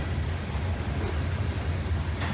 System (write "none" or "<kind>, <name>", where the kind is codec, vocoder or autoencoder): none